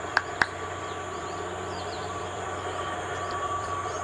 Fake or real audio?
fake